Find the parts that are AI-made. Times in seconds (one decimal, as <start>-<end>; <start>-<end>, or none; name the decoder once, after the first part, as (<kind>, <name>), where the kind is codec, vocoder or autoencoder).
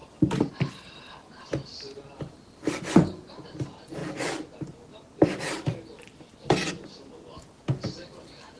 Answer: 4.0-6.7 (vocoder, BigVGAN v2)